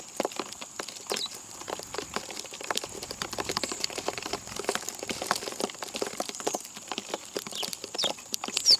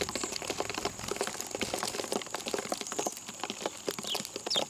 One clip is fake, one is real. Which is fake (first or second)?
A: first